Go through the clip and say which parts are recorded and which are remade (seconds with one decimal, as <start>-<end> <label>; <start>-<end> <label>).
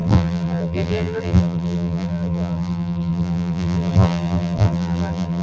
0.0-5.4 remade